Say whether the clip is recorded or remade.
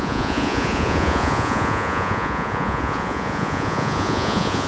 remade